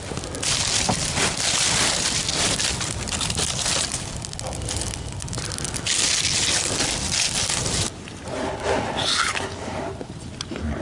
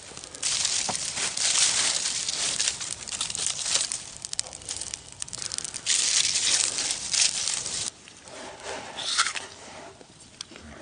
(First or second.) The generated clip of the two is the second